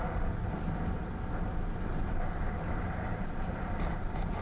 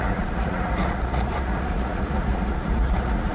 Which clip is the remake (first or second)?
second